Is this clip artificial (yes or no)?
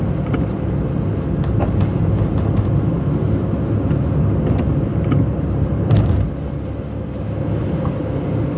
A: no